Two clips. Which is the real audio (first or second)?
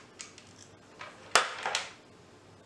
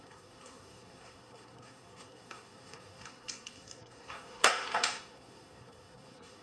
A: first